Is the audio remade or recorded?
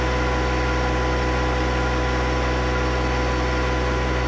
recorded